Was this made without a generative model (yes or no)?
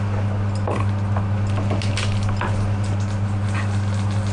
yes